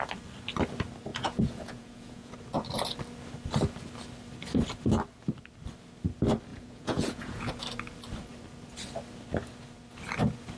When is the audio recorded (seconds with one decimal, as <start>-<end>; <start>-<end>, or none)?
0.0-1.1; 2.3-6.5; 7.5-10.6